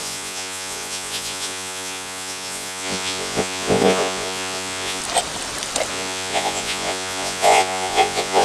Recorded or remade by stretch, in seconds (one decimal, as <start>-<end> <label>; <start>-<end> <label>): 0.0-5.0 remade; 5.0-5.9 recorded; 5.9-8.4 remade